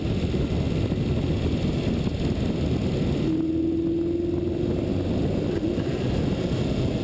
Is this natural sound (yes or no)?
yes